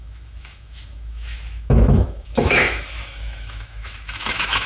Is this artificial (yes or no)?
yes